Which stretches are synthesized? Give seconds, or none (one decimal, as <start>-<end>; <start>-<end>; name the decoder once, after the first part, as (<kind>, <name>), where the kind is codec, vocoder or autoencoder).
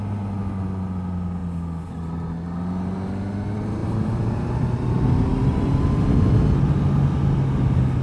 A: 3.8-4.5 (vocoder, BigVGAN v2)